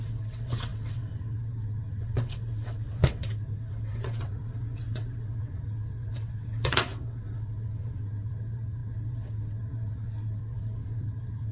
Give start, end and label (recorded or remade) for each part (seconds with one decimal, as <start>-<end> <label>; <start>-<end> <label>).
0.0-11.5 remade